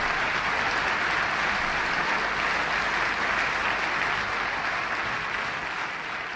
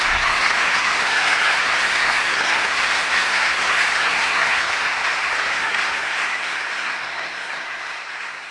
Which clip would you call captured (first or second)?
first